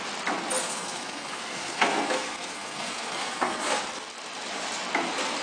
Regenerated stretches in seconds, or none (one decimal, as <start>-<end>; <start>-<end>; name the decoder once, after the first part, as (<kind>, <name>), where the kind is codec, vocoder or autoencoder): 0.6-3.8 (codec, SNAC)